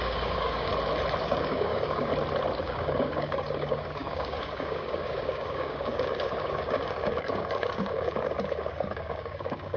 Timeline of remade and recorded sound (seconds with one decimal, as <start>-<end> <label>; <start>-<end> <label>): 0.0-0.7 remade; 0.7-1.2 recorded; 1.2-2.1 remade; 2.1-2.6 recorded; 2.6-9.8 remade